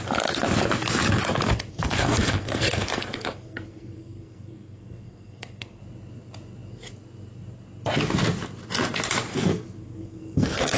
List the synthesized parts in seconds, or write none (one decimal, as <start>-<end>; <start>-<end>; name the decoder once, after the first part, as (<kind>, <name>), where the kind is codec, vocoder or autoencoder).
1.7-5.8 (codec, SNAC); 9.3-10.8